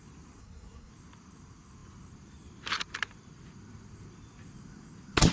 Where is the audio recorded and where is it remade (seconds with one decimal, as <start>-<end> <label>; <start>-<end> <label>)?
0.0-0.4 recorded; 0.4-0.9 remade; 0.9-5.3 recorded